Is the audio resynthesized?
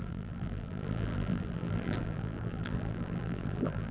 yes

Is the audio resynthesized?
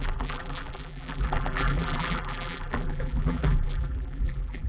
yes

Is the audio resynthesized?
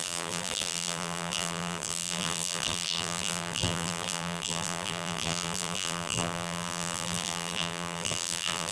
yes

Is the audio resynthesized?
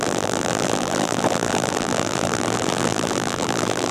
yes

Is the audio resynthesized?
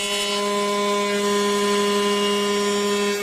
no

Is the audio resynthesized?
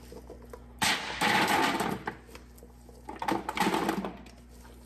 no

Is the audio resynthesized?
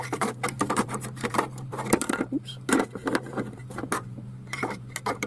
yes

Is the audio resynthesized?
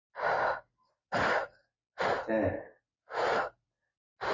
no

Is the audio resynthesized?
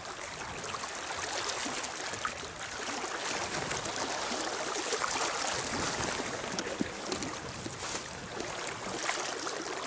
no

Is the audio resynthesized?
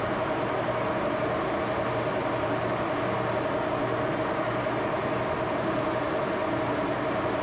no